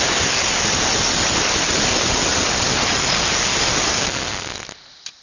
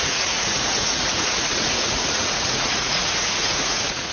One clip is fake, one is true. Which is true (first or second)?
first